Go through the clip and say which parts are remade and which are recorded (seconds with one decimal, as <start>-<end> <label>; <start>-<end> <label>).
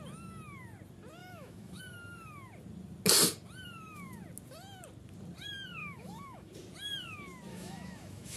0.0-1.2 recorded; 1.2-1.8 remade; 1.8-5.8 recorded; 5.8-6.5 remade; 6.5-7.5 recorded; 7.5-8.4 remade